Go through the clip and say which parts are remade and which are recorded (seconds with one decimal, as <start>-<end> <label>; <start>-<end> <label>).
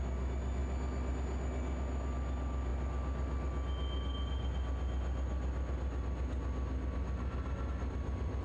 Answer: 0.0-8.4 recorded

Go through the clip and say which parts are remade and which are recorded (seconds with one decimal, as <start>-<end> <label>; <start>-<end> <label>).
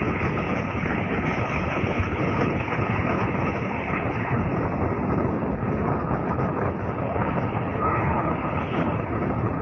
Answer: 0.0-4.5 remade; 4.5-5.2 recorded; 5.2-9.6 remade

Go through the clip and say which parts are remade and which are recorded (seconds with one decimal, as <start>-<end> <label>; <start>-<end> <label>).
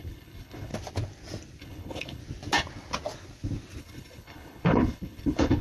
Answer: 0.0-0.7 remade; 0.7-1.6 recorded; 1.6-2.2 remade; 2.2-3.8 recorded; 3.8-5.6 remade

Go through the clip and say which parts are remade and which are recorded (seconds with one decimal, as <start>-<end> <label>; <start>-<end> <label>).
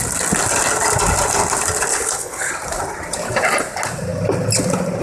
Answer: 0.0-1.9 recorded; 1.9-2.5 remade; 2.5-5.0 recorded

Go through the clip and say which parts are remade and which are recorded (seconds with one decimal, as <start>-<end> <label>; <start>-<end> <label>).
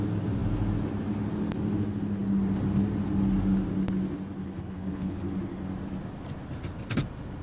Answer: 0.0-4.4 recorded; 4.4-5.2 remade; 5.2-7.4 recorded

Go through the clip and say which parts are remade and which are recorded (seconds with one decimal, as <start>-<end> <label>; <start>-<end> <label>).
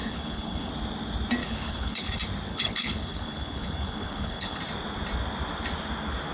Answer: 0.0-0.7 remade; 0.7-1.4 recorded; 1.4-2.1 remade; 2.1-2.5 recorded; 2.5-4.6 remade; 4.6-6.3 recorded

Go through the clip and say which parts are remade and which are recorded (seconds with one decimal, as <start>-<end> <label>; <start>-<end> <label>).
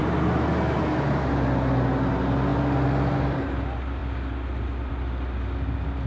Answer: 0.0-6.1 recorded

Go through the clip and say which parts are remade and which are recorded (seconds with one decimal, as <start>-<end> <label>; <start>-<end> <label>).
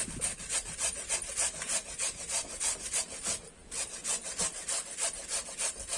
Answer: 0.0-6.0 recorded